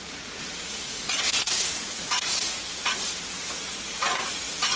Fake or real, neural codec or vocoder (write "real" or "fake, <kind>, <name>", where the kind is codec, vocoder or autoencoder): fake, vocoder, Vocos